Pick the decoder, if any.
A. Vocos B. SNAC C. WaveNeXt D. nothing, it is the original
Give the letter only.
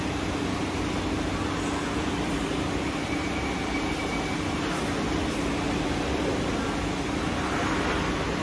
D